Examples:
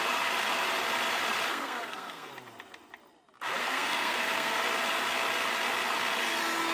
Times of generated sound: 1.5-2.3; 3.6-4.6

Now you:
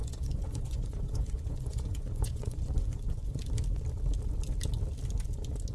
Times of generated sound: 0.0-3.4

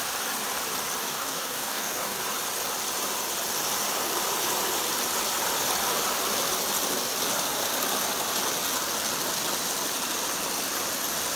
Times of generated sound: 1.0-2.2